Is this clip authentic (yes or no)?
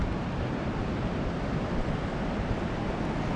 yes